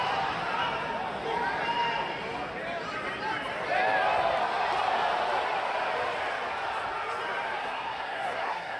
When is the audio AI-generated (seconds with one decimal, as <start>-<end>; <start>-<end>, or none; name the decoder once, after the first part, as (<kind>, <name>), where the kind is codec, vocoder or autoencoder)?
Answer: 7.6-8.8 (codec, SNAC)